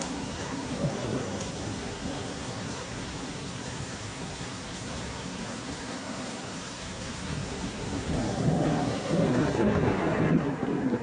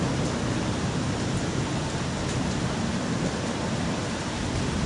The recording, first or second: second